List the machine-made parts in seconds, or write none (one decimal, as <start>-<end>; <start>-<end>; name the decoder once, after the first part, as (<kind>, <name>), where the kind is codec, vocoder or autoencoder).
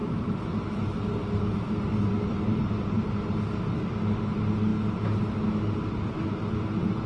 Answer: 0.0-1.0 (vocoder, BigVGAN v2); 2.3-3.1